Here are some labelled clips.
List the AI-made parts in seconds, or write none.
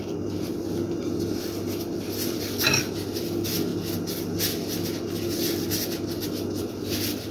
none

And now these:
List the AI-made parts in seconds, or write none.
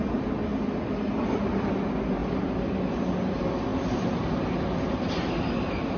3.7-4.4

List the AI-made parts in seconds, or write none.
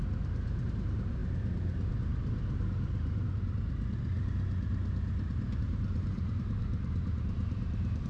0.0-1.2; 5.6-8.1